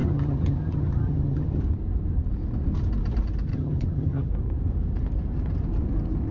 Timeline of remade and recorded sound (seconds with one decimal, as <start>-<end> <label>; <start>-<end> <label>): 0.0-1.6 remade; 1.6-3.5 recorded; 3.5-4.3 remade; 4.3-6.3 recorded